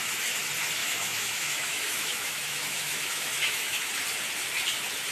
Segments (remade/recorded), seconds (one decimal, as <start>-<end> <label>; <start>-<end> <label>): 0.0-0.8 recorded; 0.8-3.9 remade; 3.9-5.1 recorded